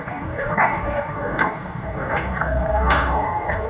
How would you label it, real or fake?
fake